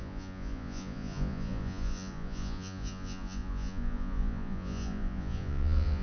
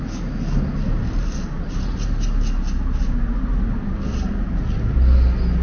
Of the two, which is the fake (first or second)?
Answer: first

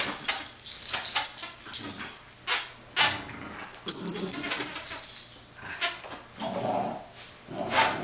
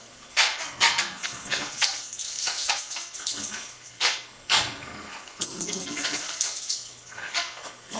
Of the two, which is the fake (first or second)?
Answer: second